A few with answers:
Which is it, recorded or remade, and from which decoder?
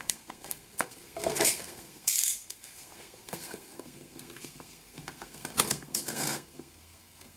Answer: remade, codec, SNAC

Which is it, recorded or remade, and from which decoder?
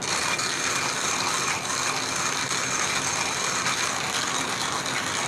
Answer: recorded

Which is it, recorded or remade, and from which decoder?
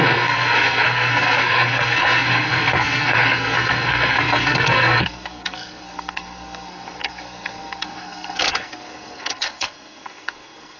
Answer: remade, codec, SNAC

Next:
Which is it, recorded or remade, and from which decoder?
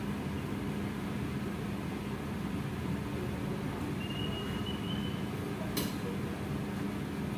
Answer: recorded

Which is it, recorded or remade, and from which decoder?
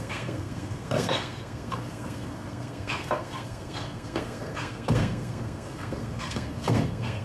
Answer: remade, codec, SNAC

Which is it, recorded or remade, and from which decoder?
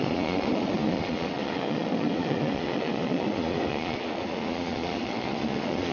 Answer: remade, vocoder, Vocos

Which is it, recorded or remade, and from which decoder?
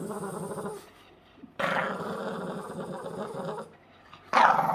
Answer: recorded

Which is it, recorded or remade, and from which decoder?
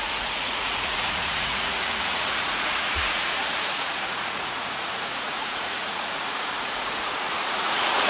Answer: remade, vocoder, Vocos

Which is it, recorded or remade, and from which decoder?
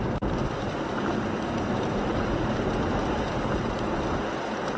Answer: remade, vocoder, BigVGAN v2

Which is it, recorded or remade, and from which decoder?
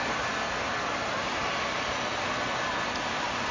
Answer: recorded